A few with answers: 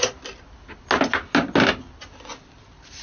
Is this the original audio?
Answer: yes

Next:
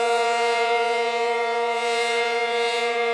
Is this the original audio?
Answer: no